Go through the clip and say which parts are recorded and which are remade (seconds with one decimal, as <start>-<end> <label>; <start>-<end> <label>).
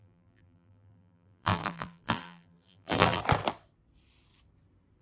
0.0-3.2 remade; 3.2-5.0 recorded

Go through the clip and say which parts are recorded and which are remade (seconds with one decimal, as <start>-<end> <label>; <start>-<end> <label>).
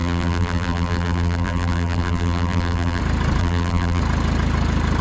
0.0-3.0 remade; 3.0-3.4 recorded; 3.4-4.0 remade; 4.0-5.0 recorded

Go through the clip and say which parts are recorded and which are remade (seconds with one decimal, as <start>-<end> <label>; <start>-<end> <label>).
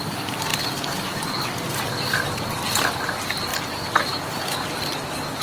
0.0-3.5 remade; 3.5-5.4 recorded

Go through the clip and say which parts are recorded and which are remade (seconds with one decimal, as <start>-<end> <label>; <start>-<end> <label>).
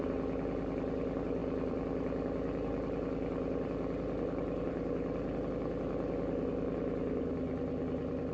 0.0-1.4 recorded; 1.4-5.5 remade; 5.5-8.3 recorded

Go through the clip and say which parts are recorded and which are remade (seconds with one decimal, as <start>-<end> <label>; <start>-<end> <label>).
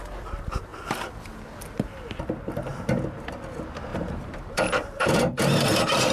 0.0-3.9 recorded; 3.9-5.4 remade; 5.4-6.1 recorded